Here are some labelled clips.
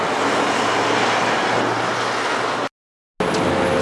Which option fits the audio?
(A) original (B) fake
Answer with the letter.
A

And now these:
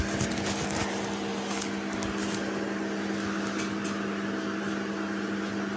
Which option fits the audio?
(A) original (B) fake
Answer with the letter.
A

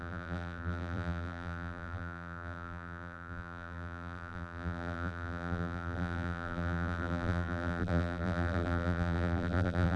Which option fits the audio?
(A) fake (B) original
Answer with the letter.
A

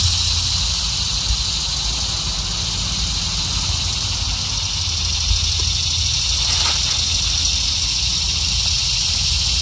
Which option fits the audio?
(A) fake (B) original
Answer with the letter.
B